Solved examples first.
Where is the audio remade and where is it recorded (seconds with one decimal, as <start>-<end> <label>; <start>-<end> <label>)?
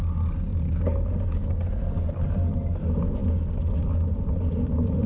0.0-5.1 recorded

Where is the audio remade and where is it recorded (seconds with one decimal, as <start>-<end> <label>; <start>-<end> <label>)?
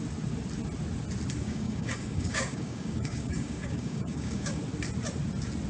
0.0-1.4 recorded; 1.4-4.6 remade; 4.6-5.7 recorded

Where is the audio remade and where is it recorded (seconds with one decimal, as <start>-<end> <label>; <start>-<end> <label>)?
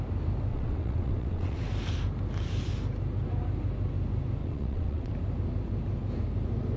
0.0-0.5 recorded; 0.5-1.6 remade; 1.6-4.4 recorded; 4.4-5.1 remade; 5.1-6.8 recorded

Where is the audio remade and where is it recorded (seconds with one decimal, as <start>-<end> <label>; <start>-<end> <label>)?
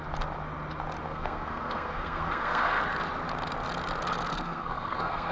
0.0-1.0 recorded; 1.0-2.8 remade; 2.8-4.3 recorded; 4.3-5.3 remade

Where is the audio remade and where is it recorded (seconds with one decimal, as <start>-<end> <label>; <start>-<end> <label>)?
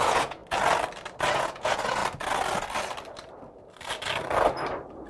0.0-0.4 remade; 0.4-1.3 recorded; 1.3-2.0 remade; 2.0-5.1 recorded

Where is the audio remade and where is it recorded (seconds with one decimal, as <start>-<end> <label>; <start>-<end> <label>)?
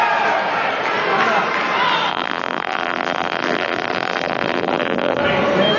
0.0-2.1 recorded; 2.1-5.2 remade; 5.2-5.8 recorded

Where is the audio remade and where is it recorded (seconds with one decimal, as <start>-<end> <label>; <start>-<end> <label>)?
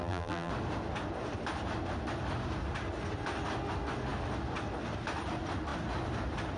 0.0-0.5 remade; 0.5-6.6 recorded